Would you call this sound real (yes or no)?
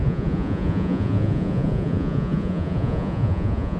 no